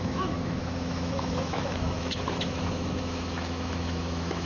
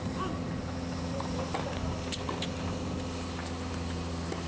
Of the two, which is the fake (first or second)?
first